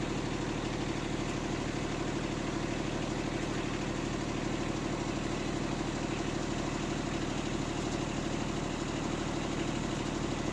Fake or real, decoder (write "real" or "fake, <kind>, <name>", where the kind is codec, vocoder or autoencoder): real